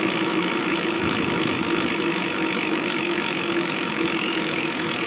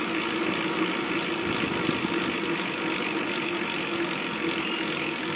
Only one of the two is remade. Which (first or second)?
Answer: first